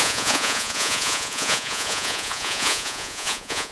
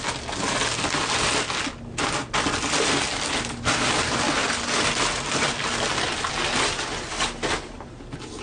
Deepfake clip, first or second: first